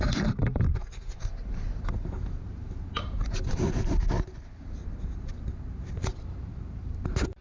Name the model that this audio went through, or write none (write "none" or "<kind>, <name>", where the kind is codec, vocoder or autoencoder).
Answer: none